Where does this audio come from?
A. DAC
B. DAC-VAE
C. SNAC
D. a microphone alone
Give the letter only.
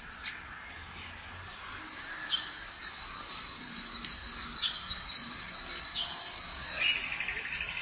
D